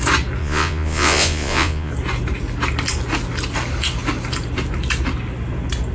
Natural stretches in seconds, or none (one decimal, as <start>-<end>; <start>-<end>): 0.0-0.4; 1.9-5.9